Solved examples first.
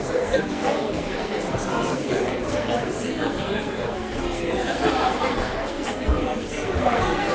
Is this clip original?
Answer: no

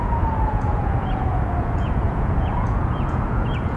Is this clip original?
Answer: no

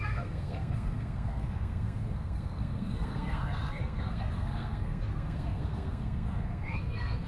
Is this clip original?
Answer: no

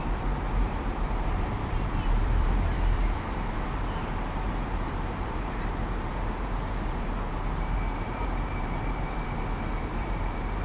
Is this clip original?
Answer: no